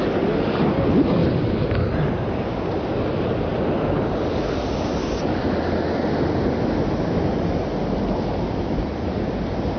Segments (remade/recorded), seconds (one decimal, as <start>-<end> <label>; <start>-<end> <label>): 0.0-9.8 recorded